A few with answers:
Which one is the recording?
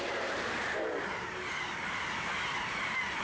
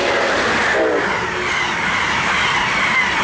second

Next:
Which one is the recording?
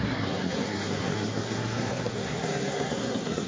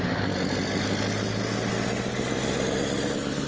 second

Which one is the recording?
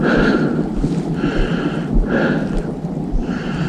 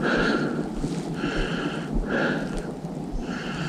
second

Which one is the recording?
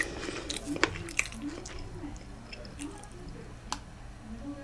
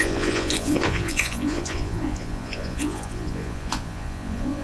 first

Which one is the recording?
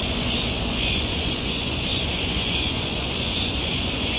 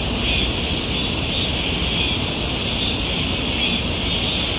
second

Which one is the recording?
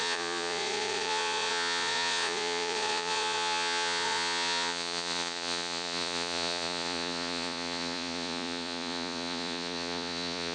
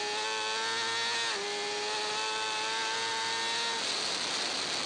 second